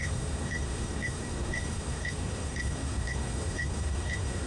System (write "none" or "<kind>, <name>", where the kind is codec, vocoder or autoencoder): codec, SNAC